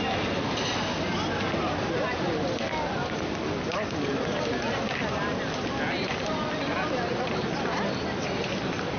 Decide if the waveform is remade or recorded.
recorded